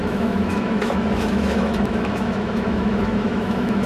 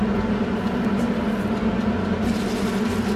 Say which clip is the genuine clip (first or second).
second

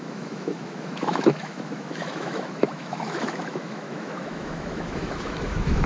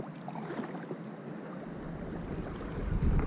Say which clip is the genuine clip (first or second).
second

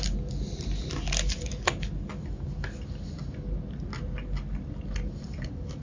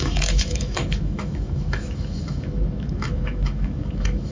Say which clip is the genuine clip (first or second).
first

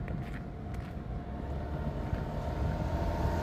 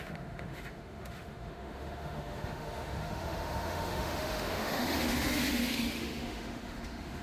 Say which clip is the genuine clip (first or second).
first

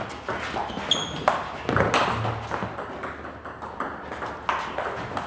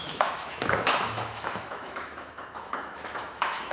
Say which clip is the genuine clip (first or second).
first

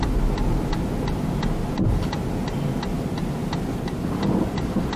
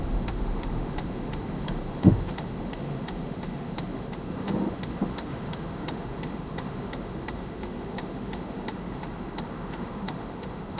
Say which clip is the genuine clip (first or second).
first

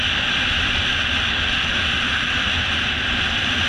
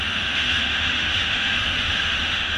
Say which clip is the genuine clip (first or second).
first